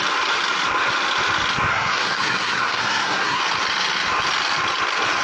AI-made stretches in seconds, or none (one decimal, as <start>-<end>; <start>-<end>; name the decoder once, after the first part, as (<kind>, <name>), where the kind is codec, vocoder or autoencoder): 1.7-3.4 (codec, SNAC)